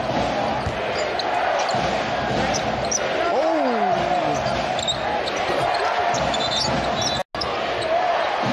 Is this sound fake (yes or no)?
no